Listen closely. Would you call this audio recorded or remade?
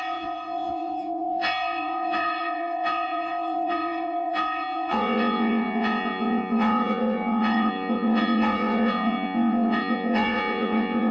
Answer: remade